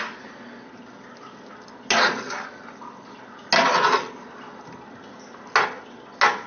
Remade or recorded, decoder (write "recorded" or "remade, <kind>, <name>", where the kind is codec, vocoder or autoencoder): recorded